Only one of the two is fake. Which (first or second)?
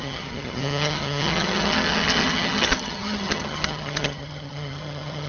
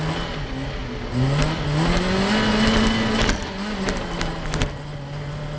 first